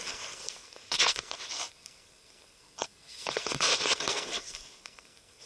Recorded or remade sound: remade